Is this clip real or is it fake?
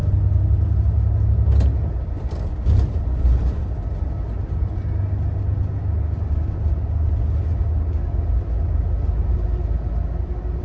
real